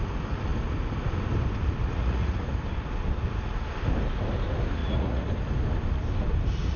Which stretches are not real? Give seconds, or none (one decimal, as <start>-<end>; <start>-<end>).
1.8-2.4; 4.8-5.3

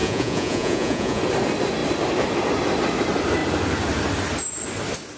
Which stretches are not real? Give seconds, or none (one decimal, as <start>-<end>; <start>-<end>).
0.0-1.2

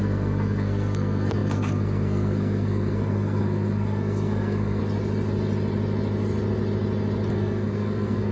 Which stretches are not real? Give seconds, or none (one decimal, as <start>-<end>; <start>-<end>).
0.0-4.8; 7.3-8.3

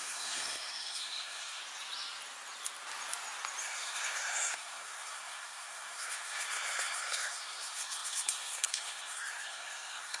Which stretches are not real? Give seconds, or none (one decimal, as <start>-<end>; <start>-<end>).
0.0-1.6; 3.6-10.2

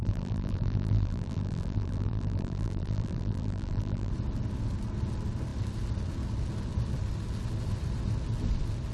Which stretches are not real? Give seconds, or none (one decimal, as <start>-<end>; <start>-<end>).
0.0-4.1

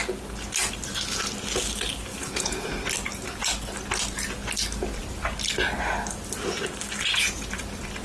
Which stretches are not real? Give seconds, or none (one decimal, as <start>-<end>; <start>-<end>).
2.1-2.7; 7.1-7.6

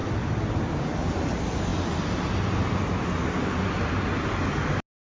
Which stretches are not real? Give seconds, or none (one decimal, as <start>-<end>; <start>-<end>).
none